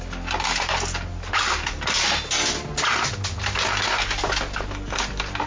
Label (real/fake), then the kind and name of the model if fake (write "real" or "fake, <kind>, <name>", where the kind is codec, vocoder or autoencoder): real